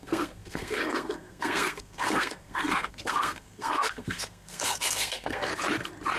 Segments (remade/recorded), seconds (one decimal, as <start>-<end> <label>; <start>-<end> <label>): 0.0-5.5 remade; 5.5-6.2 recorded